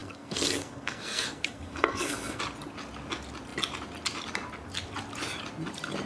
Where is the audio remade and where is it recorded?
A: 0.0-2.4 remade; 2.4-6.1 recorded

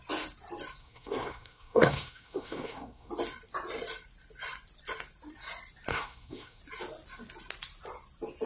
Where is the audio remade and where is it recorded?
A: 0.0-0.8 recorded; 0.8-3.1 remade; 3.1-5.9 recorded; 5.9-6.6 remade; 6.6-8.5 recorded

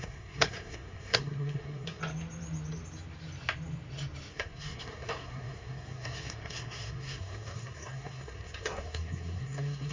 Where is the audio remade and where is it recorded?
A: 0.0-2.0 remade; 2.0-4.3 recorded; 4.3-9.9 remade

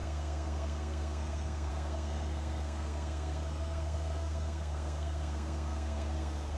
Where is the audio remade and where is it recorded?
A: 0.0-6.6 remade

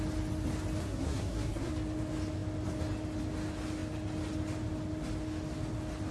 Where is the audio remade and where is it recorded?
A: 0.0-0.8 recorded; 0.8-1.7 remade; 1.7-6.1 recorded

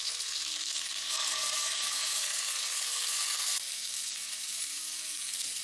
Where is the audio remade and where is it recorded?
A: 0.0-5.6 remade

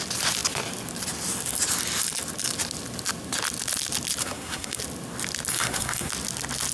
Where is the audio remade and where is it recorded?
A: 0.0-4.2 recorded; 4.2-4.8 remade; 4.8-5.5 recorded; 5.5-6.1 remade; 6.1-6.7 recorded

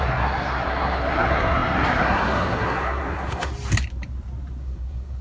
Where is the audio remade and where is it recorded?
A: 0.0-3.5 remade; 3.5-4.6 recorded; 4.6-5.2 remade